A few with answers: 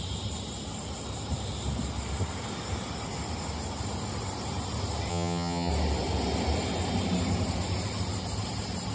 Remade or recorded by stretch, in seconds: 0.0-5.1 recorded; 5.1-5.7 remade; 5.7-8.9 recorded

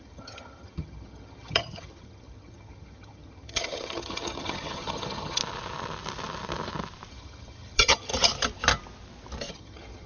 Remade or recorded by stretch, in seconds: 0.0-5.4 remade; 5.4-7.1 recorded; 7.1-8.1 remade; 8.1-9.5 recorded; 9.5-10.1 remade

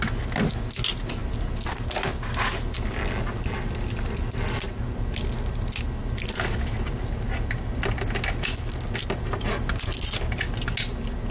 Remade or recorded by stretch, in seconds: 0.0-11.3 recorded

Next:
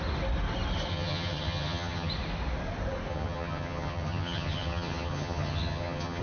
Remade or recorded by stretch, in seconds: 0.0-0.9 recorded; 0.9-2.1 remade; 2.1-3.1 recorded; 3.1-6.2 remade

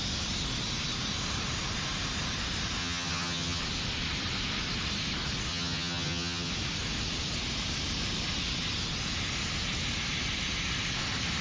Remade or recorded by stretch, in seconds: 0.0-2.8 recorded; 2.8-3.6 remade; 3.6-5.5 recorded; 5.5-6.5 remade; 6.5-11.4 recorded